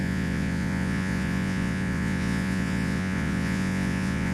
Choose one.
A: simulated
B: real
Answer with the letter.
A